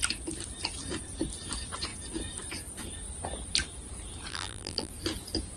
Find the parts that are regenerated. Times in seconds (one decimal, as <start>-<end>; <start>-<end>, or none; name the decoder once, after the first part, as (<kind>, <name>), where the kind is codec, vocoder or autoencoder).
4.3-4.9 (vocoder, BigVGAN v2)